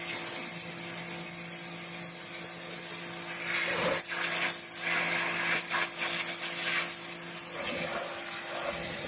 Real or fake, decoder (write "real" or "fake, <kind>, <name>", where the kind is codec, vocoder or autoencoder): real